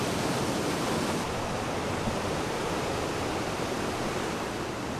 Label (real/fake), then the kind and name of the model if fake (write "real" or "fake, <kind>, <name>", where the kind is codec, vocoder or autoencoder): real